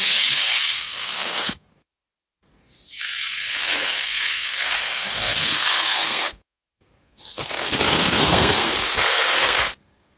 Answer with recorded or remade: remade